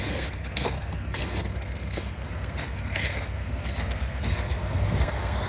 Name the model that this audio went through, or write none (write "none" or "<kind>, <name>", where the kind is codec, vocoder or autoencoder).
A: codec, SNAC